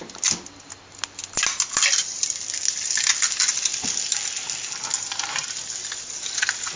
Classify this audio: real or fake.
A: real